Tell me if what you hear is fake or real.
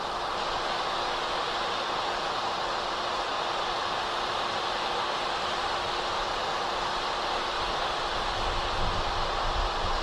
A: real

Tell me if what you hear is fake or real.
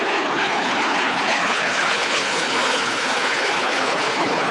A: fake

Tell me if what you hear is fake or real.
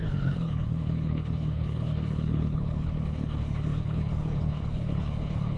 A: fake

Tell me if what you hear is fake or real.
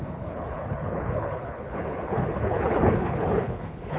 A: fake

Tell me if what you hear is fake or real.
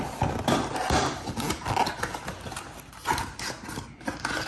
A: real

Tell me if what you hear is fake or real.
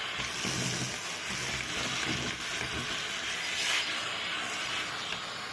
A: real